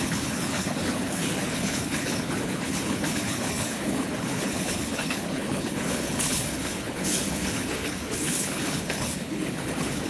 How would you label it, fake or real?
fake